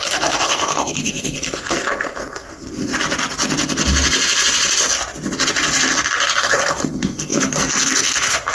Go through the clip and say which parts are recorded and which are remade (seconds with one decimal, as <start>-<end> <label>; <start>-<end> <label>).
0.0-2.9 remade; 2.9-6.4 recorded; 6.4-8.5 remade